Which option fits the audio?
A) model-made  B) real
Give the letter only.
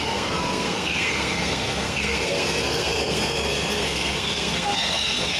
A